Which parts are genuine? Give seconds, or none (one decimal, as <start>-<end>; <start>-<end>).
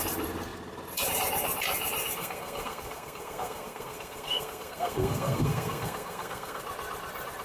0.0-2.2; 6.6-7.4